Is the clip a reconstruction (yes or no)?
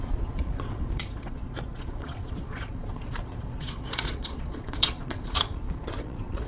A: yes